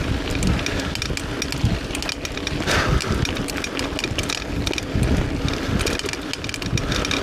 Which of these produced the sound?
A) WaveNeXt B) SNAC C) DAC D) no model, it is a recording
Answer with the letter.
D